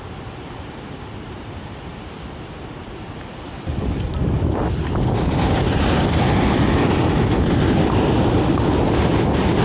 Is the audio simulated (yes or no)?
no